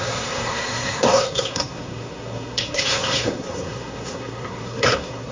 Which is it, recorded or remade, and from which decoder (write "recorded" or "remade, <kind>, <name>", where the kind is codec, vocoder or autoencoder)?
remade, codec, SNAC